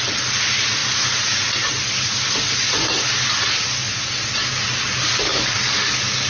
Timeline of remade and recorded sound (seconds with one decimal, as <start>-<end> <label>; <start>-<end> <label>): 0.0-5.3 recorded; 5.3-6.3 remade